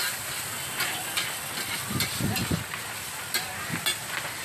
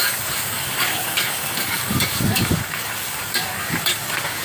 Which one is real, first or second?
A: first